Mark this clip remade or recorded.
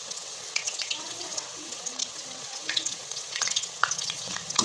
remade